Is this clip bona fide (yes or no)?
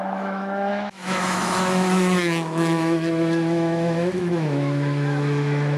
no